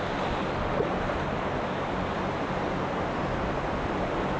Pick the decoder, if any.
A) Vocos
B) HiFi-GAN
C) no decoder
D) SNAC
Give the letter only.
C